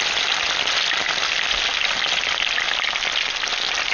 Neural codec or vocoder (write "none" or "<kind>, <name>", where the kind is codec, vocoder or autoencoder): none